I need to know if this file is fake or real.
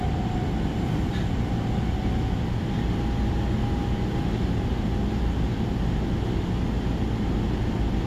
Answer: real